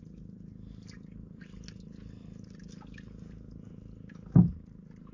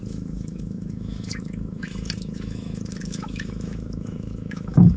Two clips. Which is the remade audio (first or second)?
second